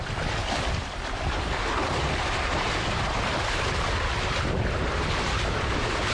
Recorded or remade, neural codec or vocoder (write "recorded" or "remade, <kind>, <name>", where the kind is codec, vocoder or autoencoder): recorded